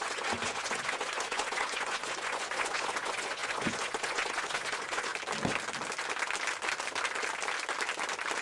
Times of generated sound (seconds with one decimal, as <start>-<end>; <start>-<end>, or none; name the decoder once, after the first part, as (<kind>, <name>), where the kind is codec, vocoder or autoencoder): 0.0-5.1 (vocoder, Vocos)